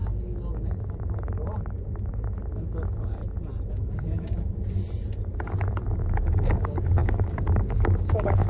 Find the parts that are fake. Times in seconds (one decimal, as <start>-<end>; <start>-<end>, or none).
0.0-3.2; 3.7-4.8; 6.0-8.5